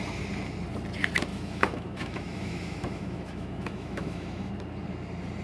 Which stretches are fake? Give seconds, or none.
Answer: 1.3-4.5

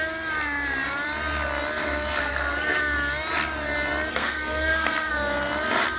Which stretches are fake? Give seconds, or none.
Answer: 2.2-2.8; 4.1-5.1

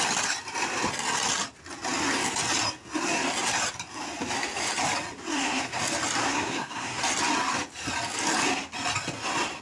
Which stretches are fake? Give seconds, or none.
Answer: 5.3-5.8; 6.2-7.0

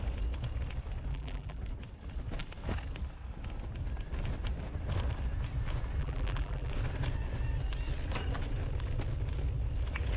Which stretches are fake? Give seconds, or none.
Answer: 1.1-1.6; 6.0-6.7

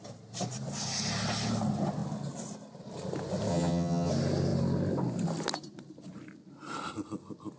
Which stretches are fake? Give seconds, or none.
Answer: 3.5-4.1

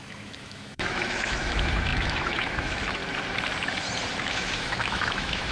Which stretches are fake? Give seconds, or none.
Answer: 0.0-3.0; 4.1-5.5

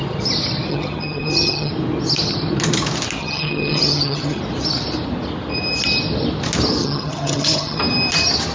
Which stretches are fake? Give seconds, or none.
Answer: 0.7-1.7; 3.2-4.4; 6.8-7.8